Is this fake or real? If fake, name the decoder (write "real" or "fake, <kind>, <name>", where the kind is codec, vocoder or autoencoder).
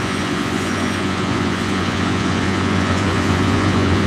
fake, vocoder, Vocos